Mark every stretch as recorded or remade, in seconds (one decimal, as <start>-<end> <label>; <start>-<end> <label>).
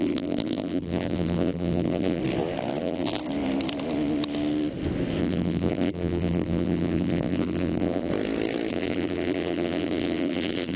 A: 0.0-2.2 remade; 2.2-2.8 recorded; 2.8-3.2 remade; 3.2-5.2 recorded; 5.2-8.1 remade; 8.1-8.7 recorded; 8.7-10.8 remade